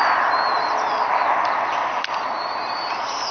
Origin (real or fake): real